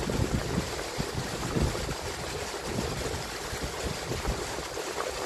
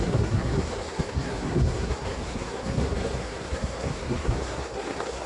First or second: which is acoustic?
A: first